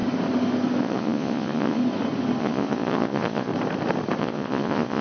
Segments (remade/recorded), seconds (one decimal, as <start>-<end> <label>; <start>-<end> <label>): 0.0-0.8 recorded; 0.8-1.8 remade; 1.8-2.4 recorded; 2.4-3.5 remade; 3.5-4.2 recorded; 4.2-5.0 remade